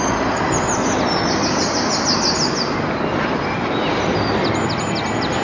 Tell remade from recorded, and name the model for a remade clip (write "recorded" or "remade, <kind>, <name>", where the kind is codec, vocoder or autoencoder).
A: recorded